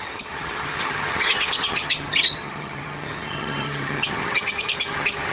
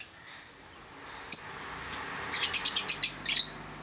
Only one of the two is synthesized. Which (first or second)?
first